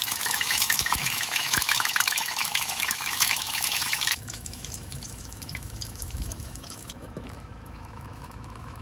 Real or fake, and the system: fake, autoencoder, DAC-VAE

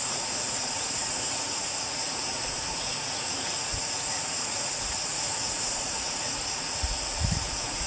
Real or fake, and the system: fake, vocoder, Vocos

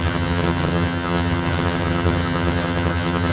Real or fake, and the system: fake, vocoder, HiFi-GAN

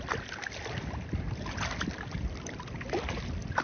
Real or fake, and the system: real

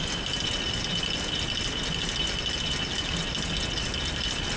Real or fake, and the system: real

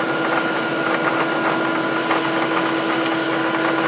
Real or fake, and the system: real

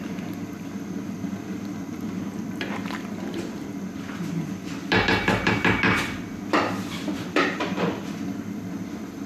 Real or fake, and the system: fake, vocoder, BigVGAN v2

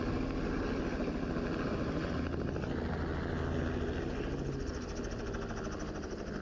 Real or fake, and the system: real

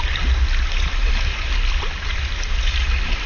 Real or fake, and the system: real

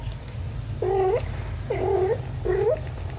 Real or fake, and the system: real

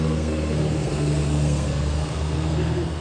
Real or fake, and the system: fake, codec, SNAC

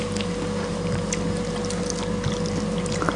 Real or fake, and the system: real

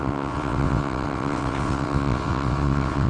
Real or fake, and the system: fake, vocoder, WaveNeXt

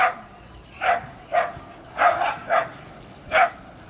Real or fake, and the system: real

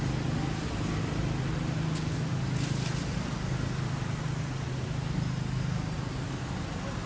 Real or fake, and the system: real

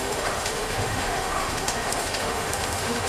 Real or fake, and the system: fake, autoencoder, DAC-VAE